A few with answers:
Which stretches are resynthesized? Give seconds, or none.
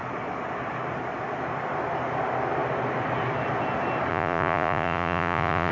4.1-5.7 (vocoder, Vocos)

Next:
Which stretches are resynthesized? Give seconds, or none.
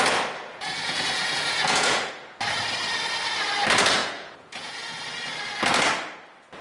0.5-2.1 (vocoder, Vocos); 4.0-5.0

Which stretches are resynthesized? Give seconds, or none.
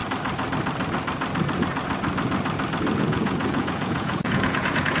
3.0-5.0 (vocoder, Vocos)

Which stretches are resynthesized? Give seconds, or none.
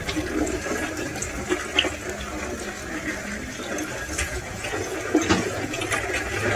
4.2-5.8 (vocoder, Vocos)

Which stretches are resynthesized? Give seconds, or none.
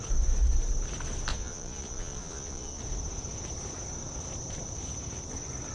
1.3-2.8 (vocoder, Vocos)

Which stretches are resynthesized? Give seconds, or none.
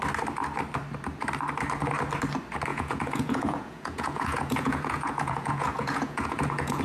2.7-6.8 (vocoder, Vocos)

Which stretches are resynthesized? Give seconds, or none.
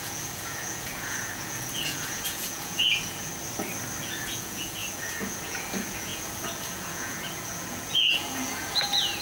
0.0-3.3 (vocoder, Vocos); 4.0-9.2